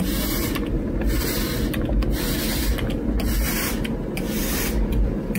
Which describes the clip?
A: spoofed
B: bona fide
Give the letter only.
B